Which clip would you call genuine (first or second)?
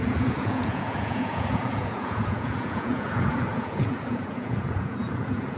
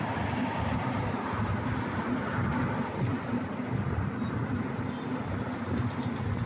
second